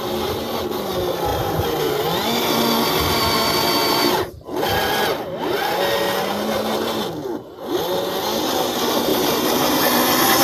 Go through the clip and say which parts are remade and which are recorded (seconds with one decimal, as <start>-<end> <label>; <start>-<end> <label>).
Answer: 0.0-1.3 recorded; 1.3-1.9 remade; 1.9-9.1 recorded; 9.1-9.8 remade; 9.8-10.4 recorded

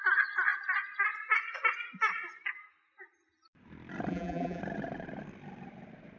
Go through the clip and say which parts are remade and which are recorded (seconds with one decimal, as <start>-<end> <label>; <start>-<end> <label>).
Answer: 0.0-4.1 recorded; 4.1-4.6 remade; 4.6-6.2 recorded

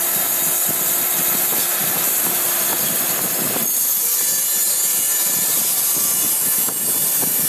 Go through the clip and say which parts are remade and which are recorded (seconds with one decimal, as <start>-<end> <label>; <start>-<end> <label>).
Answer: 0.0-4.9 recorded; 4.9-5.8 remade; 5.8-7.5 recorded